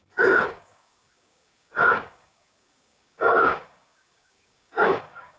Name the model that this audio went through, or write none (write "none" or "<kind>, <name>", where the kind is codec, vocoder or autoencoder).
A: codec, DAC